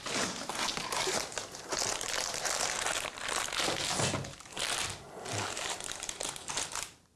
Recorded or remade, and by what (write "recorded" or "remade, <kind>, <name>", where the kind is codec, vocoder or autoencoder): recorded